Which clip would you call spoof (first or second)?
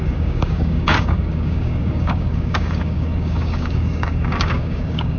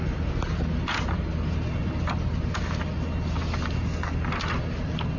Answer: first